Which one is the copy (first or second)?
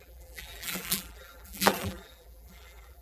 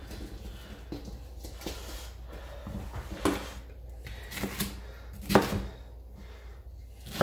first